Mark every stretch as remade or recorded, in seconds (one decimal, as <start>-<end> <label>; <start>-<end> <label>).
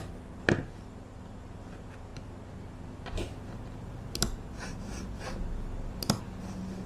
0.0-6.9 recorded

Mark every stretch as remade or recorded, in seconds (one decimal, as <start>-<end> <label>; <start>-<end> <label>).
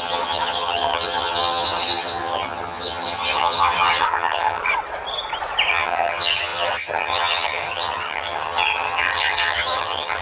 0.0-4.6 remade; 4.6-5.7 recorded; 5.7-10.2 remade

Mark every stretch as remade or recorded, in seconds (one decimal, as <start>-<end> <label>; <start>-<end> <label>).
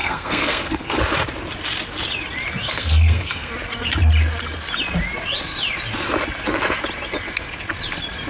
0.0-1.0 remade; 1.0-2.6 recorded; 2.6-3.5 remade; 3.5-8.3 recorded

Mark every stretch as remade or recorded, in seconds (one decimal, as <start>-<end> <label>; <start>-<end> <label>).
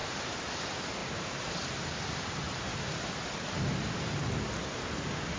0.0-0.5 remade; 0.5-1.0 recorded; 1.0-1.7 remade; 1.7-2.7 recorded; 2.7-3.9 remade; 3.9-5.4 recorded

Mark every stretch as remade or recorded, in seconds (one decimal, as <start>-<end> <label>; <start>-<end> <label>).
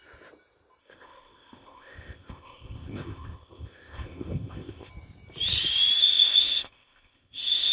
0.0-0.8 recorded; 0.8-4.9 remade; 4.9-6.0 recorded; 6.0-7.7 remade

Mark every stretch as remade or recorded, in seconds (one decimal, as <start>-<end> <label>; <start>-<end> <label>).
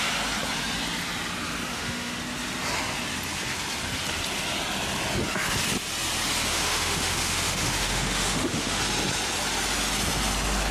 0.0-1.7 recorded; 1.7-2.2 remade; 2.2-6.5 recorded; 6.5-8.8 remade; 8.8-10.7 recorded